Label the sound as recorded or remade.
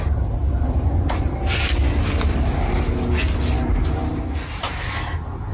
recorded